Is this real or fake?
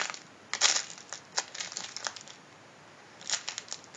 real